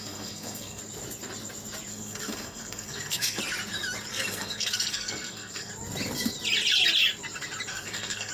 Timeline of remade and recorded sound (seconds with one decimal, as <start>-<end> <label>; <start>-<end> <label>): 0.0-0.8 remade; 0.8-1.9 recorded; 1.9-3.4 remade; 3.4-4.1 recorded; 4.1-5.7 remade; 5.7-7.7 recorded; 7.7-8.3 remade